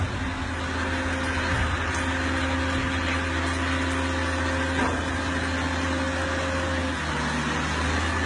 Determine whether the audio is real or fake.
real